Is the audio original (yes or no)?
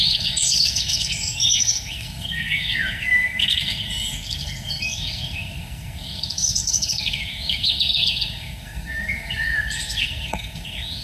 no